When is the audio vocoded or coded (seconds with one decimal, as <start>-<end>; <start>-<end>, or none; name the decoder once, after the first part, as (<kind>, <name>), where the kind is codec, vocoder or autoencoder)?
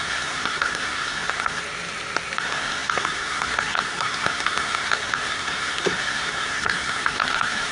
0.0-1.6 (codec, SNAC); 2.4-7.7